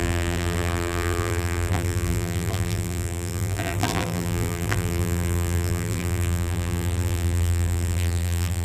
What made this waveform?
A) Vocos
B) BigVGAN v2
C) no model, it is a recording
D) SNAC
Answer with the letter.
B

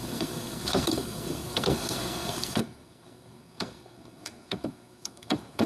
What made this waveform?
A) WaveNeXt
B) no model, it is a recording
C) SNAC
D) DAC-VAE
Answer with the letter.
C